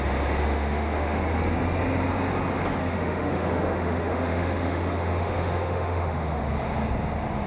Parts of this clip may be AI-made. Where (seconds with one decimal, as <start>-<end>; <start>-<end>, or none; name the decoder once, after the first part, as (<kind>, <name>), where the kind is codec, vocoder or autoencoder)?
0.4-1.2 (autoencoder, DAC-VAE); 2.8-6.4